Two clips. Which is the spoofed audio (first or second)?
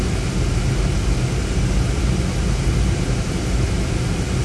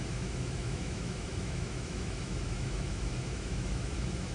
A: second